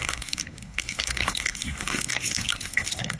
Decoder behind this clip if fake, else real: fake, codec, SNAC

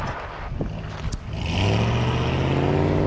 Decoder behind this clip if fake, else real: real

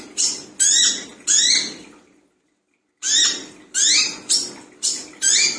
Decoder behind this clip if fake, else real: real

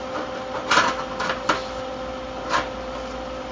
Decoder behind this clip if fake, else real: real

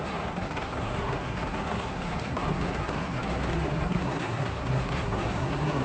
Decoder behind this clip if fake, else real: fake, codec, SNAC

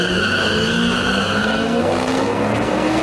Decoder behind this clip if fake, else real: fake, codec, SNAC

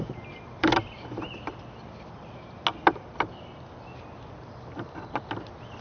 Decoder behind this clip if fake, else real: real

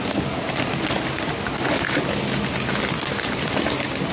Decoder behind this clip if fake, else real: real